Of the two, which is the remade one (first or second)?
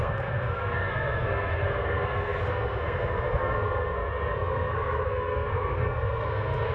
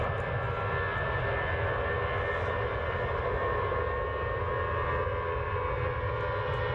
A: first